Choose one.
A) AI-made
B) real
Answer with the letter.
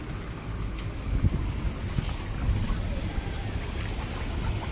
B